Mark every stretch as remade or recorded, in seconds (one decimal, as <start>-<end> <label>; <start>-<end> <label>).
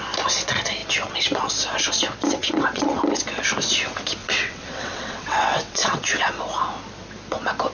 0.0-2.4 recorded; 2.4-3.0 remade; 3.0-4.2 recorded; 4.2-6.4 remade; 6.4-7.7 recorded